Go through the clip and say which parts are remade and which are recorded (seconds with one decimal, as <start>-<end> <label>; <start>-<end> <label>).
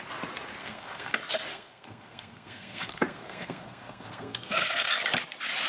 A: 0.0-0.6 recorded; 0.6-1.1 remade; 1.1-1.5 recorded; 1.5-4.9 remade; 4.9-5.7 recorded